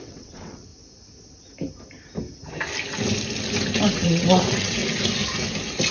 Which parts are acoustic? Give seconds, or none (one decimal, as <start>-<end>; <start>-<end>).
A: 0.7-3.9; 4.8-5.9